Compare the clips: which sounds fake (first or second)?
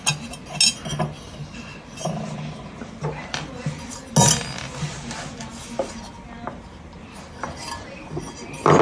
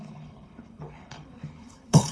second